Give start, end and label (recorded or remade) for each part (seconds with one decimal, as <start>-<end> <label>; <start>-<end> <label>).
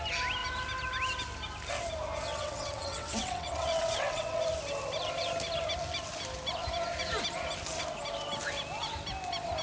0.0-2.3 recorded; 2.3-4.4 remade; 4.4-9.6 recorded